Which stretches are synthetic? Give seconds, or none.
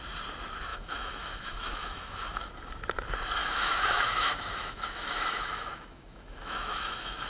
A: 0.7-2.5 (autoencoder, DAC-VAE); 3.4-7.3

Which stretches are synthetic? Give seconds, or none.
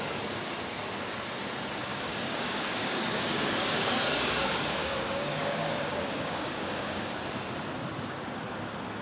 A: 1.9-7.0 (codec, DAC)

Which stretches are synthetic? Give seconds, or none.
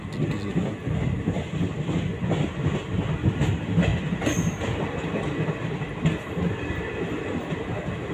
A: none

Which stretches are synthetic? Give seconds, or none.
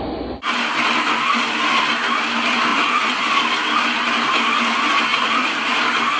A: 2.7-3.2 (vocoder, Vocos); 5.1-5.8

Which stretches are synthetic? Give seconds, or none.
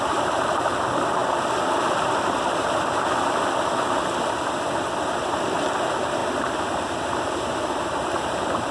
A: 0.0-1.2 (vocoder, BigVGAN v2); 5.1-6.2; 7.8-8.7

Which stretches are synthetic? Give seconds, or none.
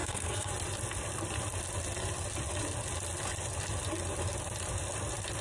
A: 0.0-0.5 (codec, SNAC)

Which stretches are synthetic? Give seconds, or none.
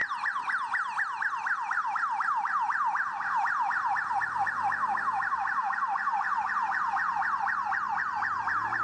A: none